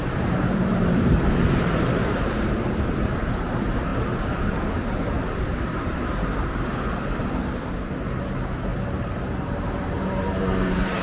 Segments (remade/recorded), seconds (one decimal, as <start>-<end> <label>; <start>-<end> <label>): 0.0-6.7 remade; 6.7-7.6 recorded; 7.6-11.0 remade